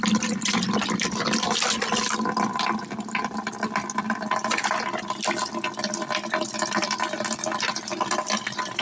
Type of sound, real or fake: real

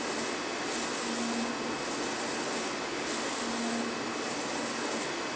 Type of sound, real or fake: real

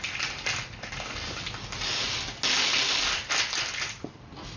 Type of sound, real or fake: real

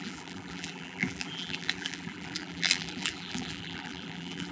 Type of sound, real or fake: fake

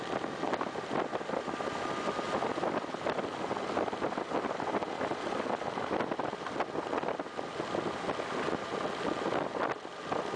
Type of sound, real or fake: real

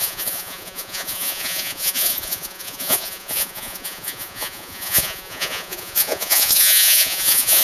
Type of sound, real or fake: fake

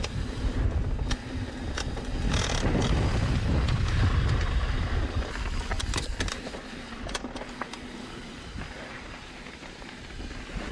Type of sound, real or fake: real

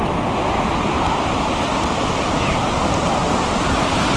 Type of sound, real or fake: real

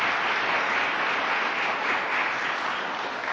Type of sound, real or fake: real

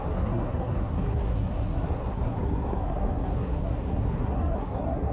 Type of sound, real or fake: fake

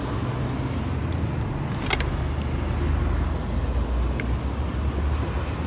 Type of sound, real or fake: real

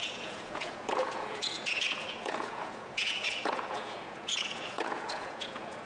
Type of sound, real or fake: fake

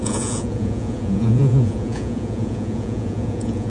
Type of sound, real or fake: fake